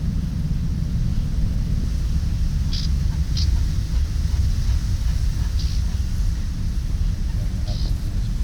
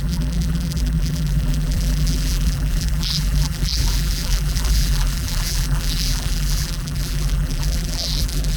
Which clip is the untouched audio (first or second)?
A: first